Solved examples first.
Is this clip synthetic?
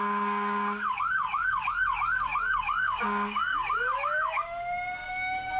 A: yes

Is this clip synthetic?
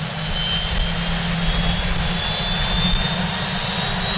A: no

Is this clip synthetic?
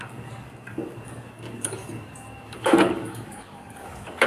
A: yes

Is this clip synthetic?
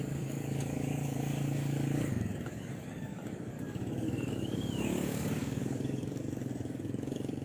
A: yes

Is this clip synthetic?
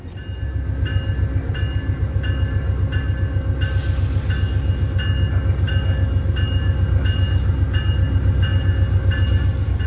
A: no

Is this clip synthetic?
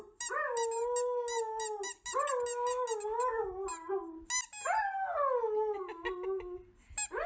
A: no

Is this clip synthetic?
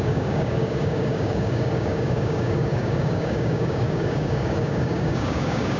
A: yes